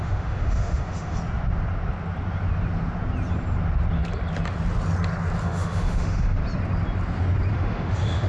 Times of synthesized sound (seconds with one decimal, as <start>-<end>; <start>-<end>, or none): 0.0-1.2; 5.4-6.4; 7.5-8.3

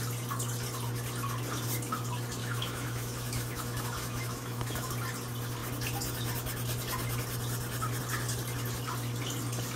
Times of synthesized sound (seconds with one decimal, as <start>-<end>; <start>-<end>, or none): 2.4-4.9

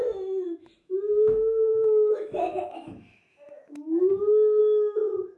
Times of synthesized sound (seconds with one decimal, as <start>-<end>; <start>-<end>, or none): 0.0-5.4

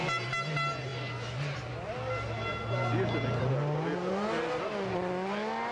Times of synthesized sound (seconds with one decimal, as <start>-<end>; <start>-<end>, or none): none

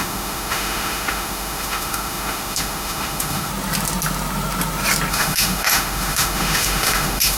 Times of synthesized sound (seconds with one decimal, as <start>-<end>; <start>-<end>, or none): 0.0-3.5; 5.1-7.4